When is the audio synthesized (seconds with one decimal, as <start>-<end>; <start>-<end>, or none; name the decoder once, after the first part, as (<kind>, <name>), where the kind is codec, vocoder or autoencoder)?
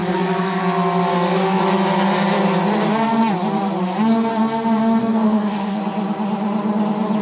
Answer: 0.0-0.6 (codec, SNAC); 1.1-1.6; 5.0-5.8